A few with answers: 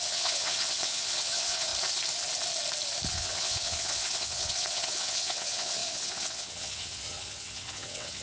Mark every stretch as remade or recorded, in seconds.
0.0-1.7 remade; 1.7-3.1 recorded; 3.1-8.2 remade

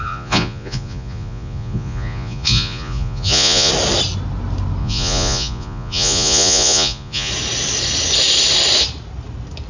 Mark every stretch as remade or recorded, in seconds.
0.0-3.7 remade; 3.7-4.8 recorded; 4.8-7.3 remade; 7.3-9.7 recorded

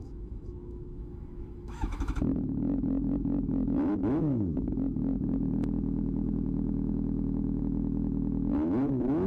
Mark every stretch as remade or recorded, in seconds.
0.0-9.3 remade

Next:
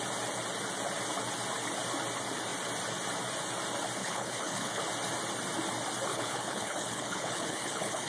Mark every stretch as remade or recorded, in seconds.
0.0-4.0 recorded; 4.0-4.8 remade; 4.8-6.1 recorded; 6.1-8.1 remade